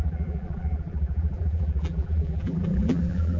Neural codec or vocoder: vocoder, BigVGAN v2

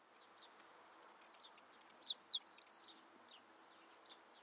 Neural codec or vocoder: none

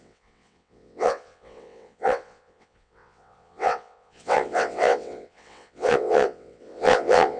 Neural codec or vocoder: vocoder, WaveNeXt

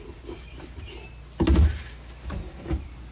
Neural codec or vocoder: none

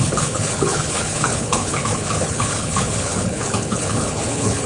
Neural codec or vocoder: codec, HILCodec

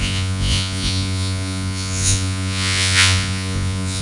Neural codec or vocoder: vocoder, Vocos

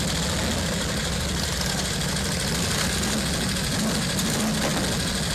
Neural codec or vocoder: none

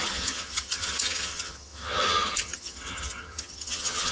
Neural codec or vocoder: vocoder, HiFi-GAN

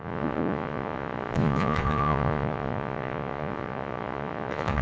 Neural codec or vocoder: vocoder, Vocos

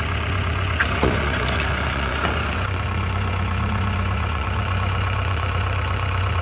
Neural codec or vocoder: vocoder, Vocos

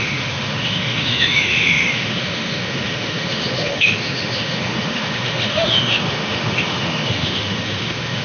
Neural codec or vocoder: autoencoder, DAC-VAE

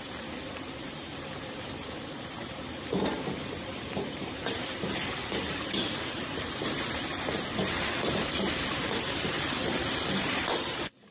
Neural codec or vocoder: vocoder, BigVGAN v2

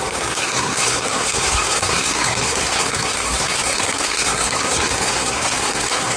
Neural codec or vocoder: codec, SNAC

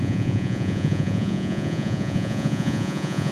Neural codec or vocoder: vocoder, Vocos